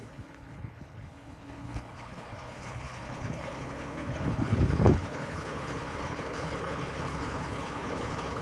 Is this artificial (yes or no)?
yes